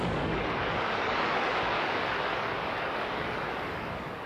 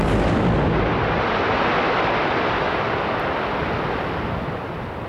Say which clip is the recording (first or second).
second